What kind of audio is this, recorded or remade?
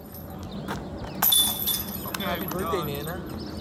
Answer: recorded